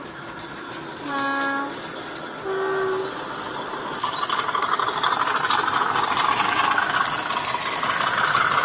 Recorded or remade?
recorded